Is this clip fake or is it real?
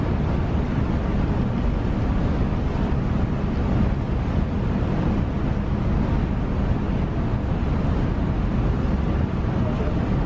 real